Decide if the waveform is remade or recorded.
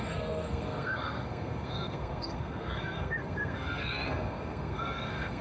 remade